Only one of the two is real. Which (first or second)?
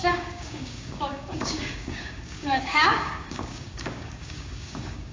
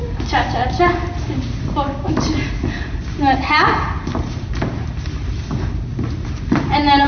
second